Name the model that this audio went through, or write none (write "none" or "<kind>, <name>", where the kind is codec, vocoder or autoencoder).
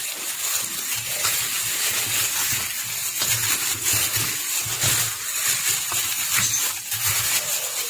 none